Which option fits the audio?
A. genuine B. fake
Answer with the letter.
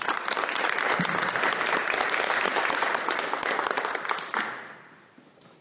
B